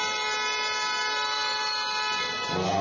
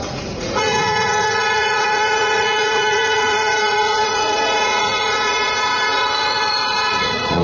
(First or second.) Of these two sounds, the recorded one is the first